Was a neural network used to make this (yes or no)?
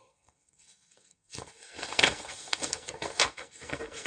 yes